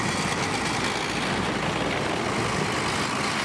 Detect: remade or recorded recorded